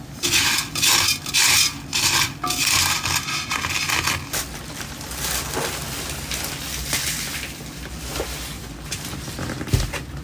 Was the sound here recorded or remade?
recorded